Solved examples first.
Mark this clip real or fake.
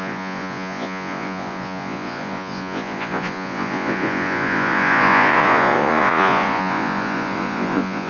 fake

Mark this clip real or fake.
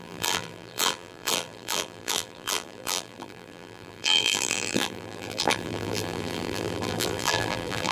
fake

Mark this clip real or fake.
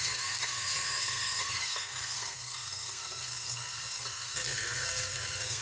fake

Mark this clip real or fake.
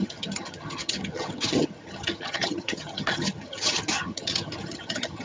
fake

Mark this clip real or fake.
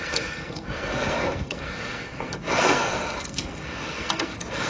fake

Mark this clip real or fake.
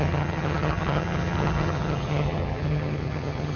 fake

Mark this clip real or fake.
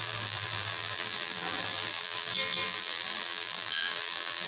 fake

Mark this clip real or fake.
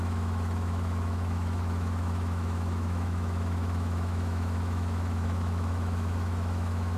fake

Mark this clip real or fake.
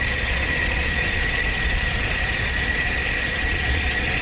fake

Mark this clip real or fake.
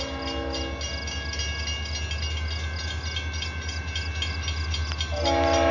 real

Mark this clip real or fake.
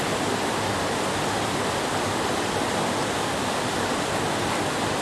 real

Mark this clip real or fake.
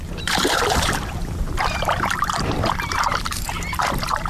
fake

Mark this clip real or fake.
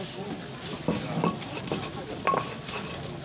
real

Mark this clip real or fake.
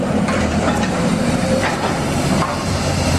fake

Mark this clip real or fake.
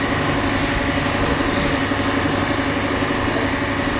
real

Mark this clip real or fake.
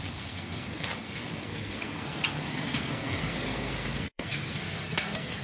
fake